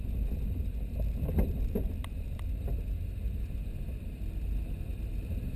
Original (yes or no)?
yes